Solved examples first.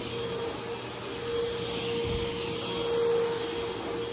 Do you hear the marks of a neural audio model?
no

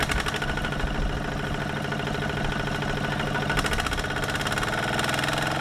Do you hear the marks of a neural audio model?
no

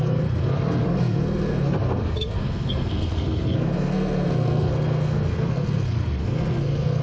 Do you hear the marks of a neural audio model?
yes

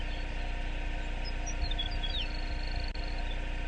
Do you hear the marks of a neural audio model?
no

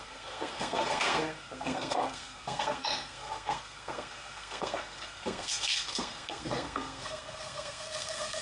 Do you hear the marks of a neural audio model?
yes